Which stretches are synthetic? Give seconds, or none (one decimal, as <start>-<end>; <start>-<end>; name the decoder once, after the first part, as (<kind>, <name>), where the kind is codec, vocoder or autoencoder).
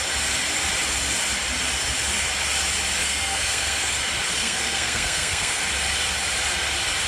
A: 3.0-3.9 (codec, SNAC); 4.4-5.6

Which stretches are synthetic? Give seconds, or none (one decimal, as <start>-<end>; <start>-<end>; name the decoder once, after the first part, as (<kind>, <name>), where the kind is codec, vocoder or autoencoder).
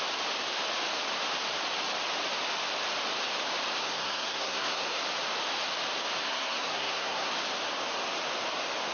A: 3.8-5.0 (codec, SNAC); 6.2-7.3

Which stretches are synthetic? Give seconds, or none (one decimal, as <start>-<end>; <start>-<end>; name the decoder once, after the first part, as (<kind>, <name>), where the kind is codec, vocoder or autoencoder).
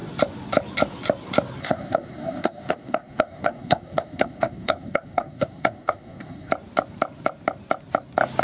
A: 1.6-6.5 (codec, SNAC)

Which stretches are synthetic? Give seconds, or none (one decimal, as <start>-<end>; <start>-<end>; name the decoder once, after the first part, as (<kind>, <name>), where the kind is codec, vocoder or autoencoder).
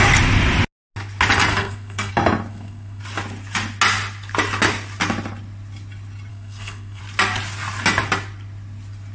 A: 1.5-2.1 (codec, SNAC); 2.5-3.0; 6.3-7.0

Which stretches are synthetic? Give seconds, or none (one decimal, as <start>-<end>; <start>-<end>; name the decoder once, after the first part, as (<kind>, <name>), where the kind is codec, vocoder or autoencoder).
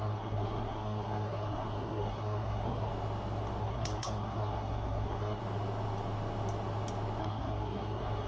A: 0.0-2.9 (codec, SNAC); 3.6-5.4; 7.2-8.3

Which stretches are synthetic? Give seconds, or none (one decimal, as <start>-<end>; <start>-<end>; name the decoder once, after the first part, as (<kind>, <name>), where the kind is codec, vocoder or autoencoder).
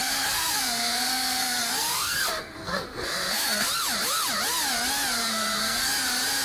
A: 0.0-3.7 (codec, SNAC); 5.2-5.9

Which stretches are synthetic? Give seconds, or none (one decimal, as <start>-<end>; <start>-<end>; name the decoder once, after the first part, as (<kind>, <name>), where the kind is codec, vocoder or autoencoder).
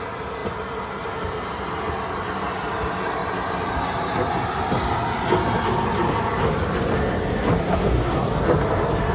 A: 7.6-8.3 (codec, SNAC)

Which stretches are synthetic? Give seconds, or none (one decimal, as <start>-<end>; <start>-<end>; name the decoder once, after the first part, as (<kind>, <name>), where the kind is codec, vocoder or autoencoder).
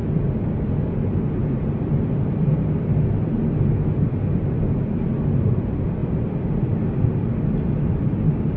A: none